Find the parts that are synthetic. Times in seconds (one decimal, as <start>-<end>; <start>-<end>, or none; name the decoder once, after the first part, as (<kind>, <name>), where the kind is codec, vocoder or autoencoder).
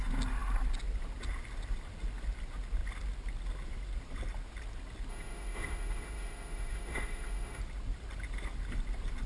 5.1-7.6 (autoencoder, DAC-VAE)